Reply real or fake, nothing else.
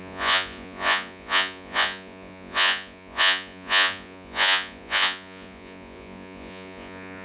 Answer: fake